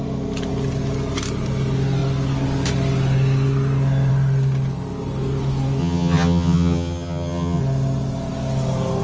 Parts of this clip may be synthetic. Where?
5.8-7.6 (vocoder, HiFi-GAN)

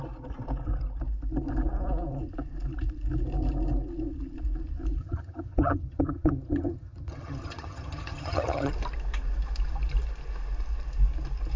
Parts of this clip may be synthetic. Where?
5.0-8.7 (vocoder, HiFi-GAN)

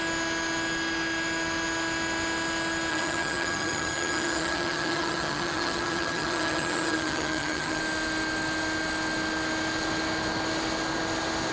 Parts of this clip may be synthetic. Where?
2.9-7.8 (vocoder, HiFi-GAN)

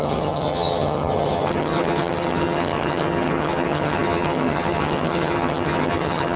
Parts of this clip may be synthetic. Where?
0.0-6.4 (vocoder, HiFi-GAN)

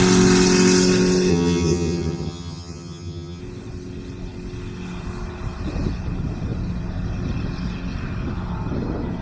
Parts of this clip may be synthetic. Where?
1.3-3.4 (vocoder, HiFi-GAN)

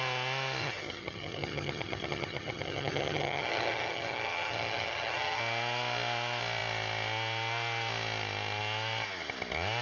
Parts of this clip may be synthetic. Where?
0.6-5.4 (vocoder, HiFi-GAN)

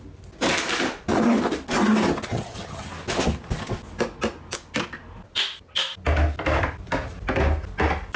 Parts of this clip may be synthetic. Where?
2.3-2.9 (vocoder, HiFi-GAN)

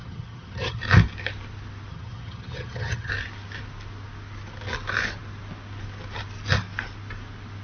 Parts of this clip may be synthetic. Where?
0.0-0.8 (vocoder, HiFi-GAN); 1.9-3.1